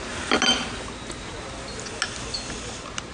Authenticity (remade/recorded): recorded